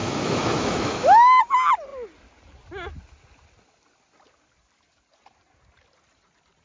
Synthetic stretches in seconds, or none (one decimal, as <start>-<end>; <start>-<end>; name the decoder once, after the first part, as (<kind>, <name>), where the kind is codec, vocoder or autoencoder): 0.0-1.4 (autoencoder, DAC-VAE)